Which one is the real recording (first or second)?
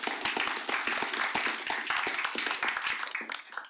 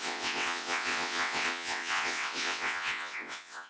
first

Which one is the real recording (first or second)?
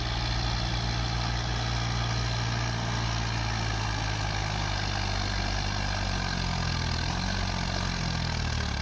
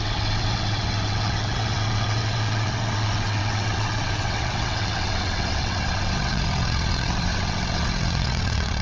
first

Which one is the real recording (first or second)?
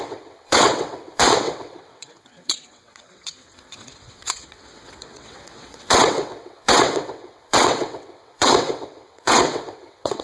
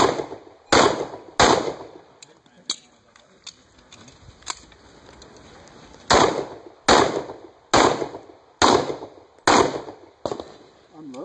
second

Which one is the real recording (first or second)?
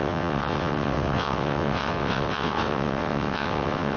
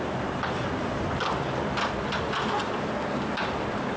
second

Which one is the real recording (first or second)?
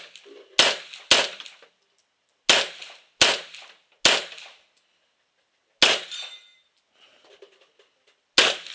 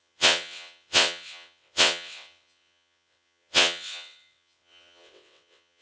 first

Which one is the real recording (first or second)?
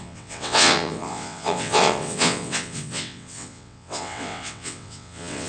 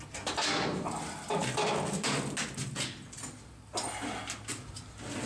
second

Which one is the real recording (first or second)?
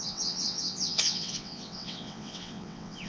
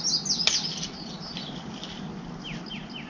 second